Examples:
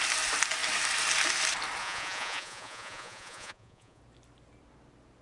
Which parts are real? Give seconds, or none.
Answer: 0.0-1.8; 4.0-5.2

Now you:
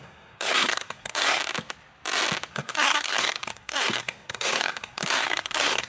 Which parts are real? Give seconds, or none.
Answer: 1.4-2.5

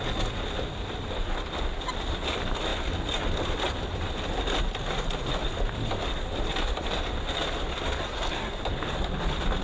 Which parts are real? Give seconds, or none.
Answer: 0.0-8.0; 8.6-9.6

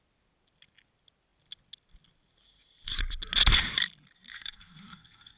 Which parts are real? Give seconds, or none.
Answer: 0.0-4.3

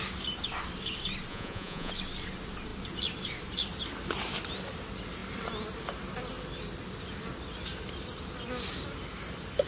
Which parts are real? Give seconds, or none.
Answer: 0.0-1.3; 1.9-9.7

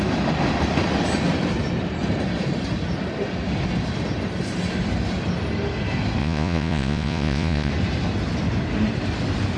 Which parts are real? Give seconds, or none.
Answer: 0.0-6.2; 7.7-9.6